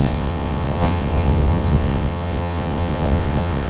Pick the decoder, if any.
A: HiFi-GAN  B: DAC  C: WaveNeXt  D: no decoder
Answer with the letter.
C